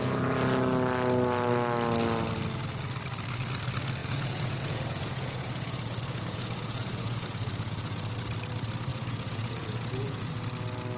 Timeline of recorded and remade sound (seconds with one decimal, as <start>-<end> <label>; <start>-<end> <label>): 0.0-4.0 recorded; 4.0-8.1 remade; 8.1-8.9 recorded; 8.9-10.3 remade; 10.3-11.0 recorded